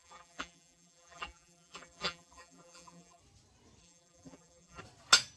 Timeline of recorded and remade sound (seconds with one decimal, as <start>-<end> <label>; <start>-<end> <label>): 0.0-3.2 remade; 3.2-3.8 recorded; 3.8-4.8 remade; 4.8-5.4 recorded